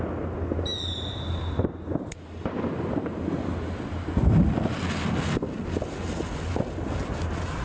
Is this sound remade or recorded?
recorded